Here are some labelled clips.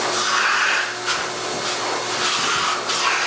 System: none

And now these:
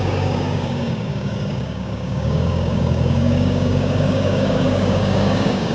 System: codec, DAC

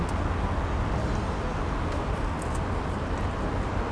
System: none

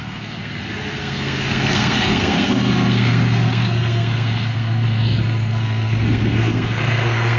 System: codec, SNAC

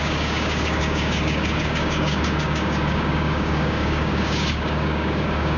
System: codec, DAC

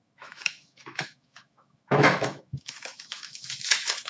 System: autoencoder, DAC-VAE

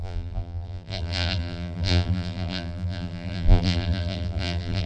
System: vocoder, BigVGAN v2